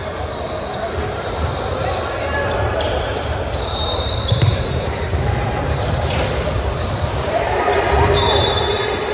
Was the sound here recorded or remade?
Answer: remade